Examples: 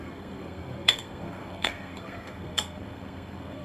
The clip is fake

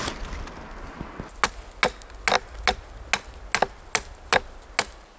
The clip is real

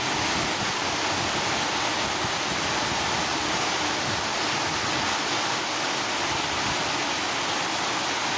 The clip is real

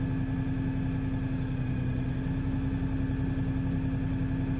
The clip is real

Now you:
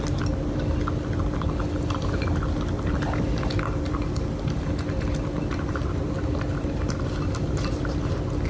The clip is real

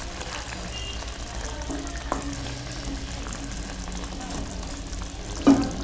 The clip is real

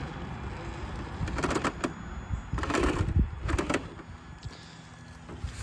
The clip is real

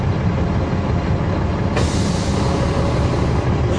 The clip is real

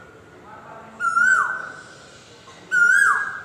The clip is real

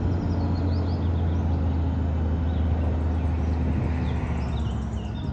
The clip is real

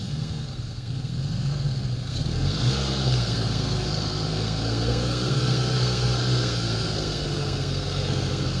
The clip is fake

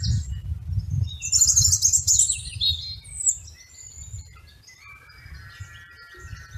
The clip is real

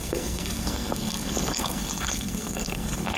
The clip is fake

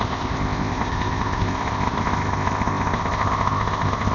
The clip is fake